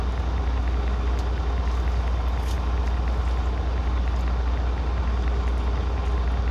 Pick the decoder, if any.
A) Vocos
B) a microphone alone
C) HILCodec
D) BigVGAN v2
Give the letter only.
B